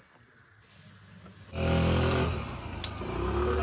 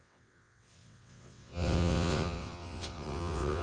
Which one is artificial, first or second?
second